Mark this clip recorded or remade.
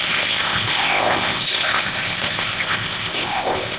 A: remade